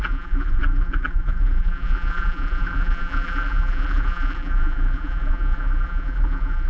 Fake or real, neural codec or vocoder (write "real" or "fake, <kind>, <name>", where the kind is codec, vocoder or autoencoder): fake, vocoder, BigVGAN v2